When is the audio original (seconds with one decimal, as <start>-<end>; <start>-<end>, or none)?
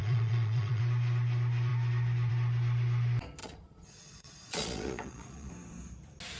0.8-3.4; 5.5-6.4